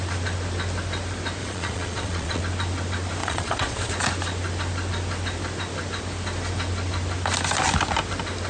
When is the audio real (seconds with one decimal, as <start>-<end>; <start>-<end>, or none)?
0.0-1.4; 2.4-3.2; 3.9-8.5